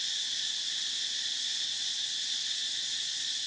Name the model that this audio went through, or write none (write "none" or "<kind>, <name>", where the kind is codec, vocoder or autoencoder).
none